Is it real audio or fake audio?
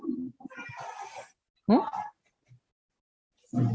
real